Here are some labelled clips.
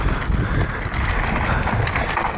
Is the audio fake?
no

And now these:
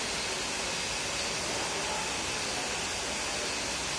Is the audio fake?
no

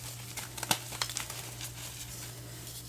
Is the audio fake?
no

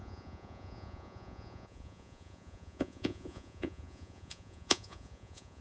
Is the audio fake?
yes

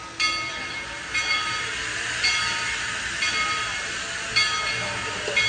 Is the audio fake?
no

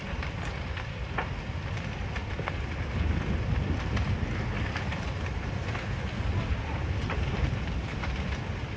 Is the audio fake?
no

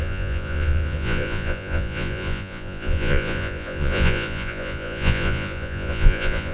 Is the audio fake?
yes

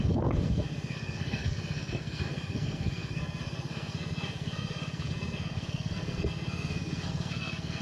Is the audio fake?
yes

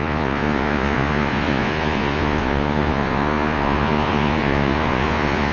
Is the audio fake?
yes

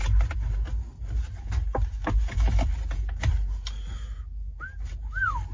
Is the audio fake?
no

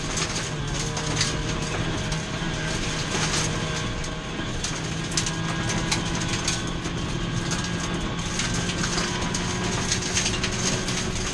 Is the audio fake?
no